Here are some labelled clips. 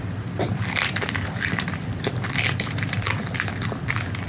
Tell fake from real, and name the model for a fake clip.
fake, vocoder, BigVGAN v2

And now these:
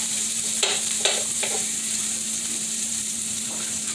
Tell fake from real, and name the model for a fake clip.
fake, vocoder, BigVGAN v2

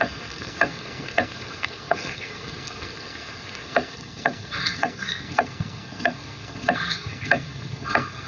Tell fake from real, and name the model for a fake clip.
fake, codec, SNAC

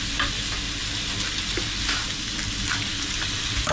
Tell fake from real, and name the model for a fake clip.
real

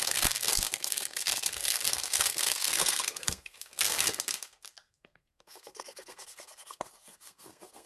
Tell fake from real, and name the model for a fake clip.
fake, codec, SNAC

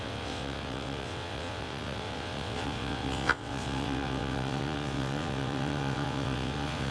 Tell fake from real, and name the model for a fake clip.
fake, vocoder, WaveNeXt